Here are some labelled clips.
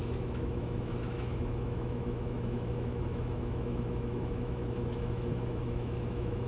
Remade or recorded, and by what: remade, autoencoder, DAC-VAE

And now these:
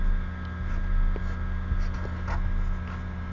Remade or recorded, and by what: recorded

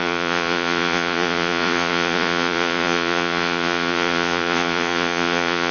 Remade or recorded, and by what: remade, vocoder, Vocos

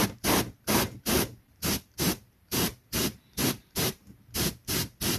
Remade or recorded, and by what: remade, vocoder, BigVGAN v2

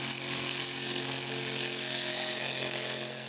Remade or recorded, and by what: remade, codec, SNAC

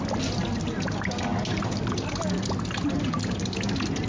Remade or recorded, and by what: recorded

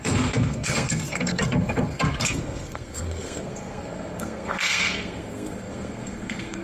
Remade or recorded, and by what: remade, codec, SNAC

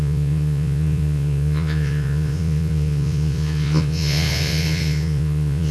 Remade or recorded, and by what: remade, vocoder, Vocos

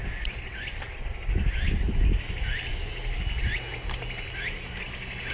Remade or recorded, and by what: recorded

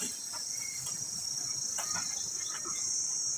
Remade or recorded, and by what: recorded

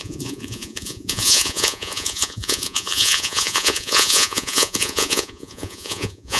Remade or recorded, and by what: remade, vocoder, Vocos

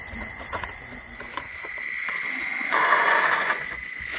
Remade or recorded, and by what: remade, vocoder, Vocos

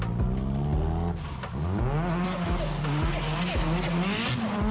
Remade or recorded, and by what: recorded